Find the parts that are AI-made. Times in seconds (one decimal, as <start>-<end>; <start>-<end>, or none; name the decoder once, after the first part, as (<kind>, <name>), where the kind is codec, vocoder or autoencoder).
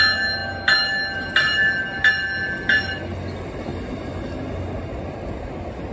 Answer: none